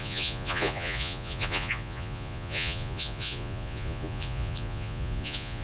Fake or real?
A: fake